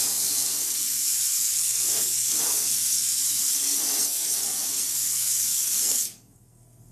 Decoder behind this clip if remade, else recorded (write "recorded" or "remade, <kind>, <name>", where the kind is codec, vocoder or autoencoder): remade, codec, SNAC